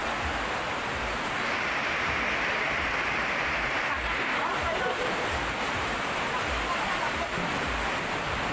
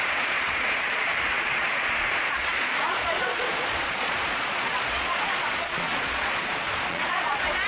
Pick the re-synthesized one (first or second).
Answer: second